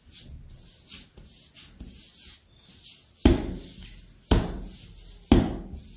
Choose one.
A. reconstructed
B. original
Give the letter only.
B